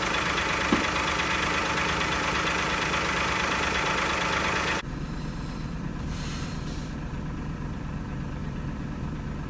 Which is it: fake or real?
fake